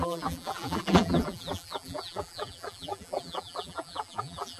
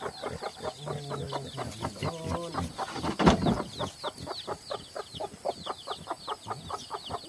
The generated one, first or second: first